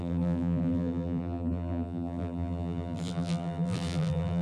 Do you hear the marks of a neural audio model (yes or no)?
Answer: yes